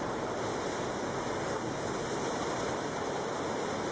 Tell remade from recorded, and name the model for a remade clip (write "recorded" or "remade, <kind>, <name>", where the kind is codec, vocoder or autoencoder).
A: recorded